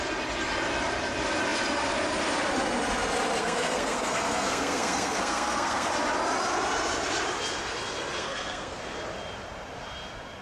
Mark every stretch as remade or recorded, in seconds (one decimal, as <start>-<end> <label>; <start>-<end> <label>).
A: 0.0-3.4 recorded; 3.4-5.9 remade; 5.9-8.2 recorded; 8.2-8.8 remade; 8.8-10.4 recorded